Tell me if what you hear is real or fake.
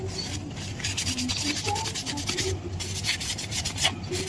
real